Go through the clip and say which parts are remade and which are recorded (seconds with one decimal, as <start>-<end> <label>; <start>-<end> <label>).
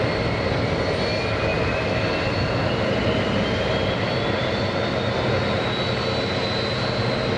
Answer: 0.0-7.4 recorded